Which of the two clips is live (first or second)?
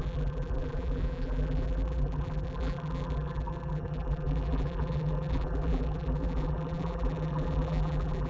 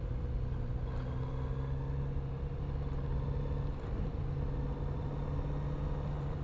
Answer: second